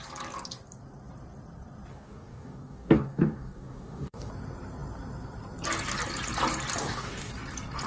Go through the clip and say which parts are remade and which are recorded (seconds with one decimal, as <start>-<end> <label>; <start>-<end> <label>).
0.0-1.9 recorded; 1.9-4.3 remade; 4.3-6.8 recorded; 6.8-7.3 remade; 7.3-7.9 recorded